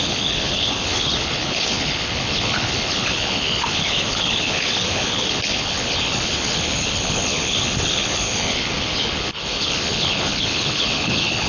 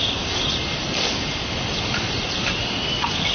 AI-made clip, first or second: first